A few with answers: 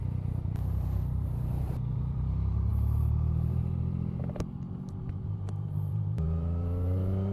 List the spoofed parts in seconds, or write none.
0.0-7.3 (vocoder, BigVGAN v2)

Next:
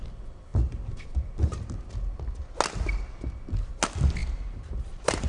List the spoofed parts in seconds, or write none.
4.2-5.3 (vocoder, BigVGAN v2)

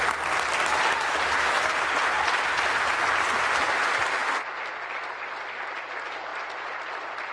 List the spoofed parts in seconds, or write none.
6.3-6.8 (vocoder, BigVGAN v2)

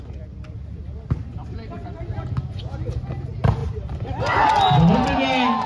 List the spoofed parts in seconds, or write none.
3.6-4.6 (vocoder, BigVGAN v2)

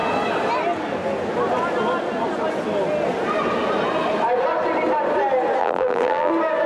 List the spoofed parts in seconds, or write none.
5.6-6.3 (vocoder, BigVGAN v2)

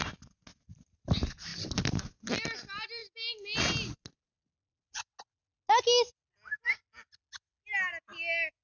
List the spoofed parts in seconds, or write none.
none